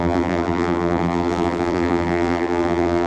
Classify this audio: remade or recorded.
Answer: remade